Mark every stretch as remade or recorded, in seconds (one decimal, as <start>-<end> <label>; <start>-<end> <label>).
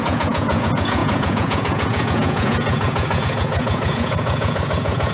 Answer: 0.0-5.1 remade